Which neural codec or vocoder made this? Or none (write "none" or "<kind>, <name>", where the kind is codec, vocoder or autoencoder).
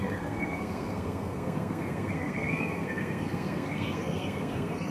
codec, SNAC